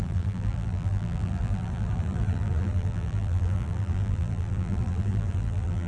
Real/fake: fake